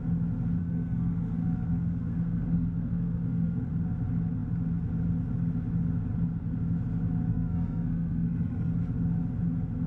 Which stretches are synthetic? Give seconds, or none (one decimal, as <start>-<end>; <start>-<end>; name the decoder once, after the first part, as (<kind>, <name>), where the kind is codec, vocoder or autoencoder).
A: 0.6-3.7 (codec, SNAC); 7.3-8.7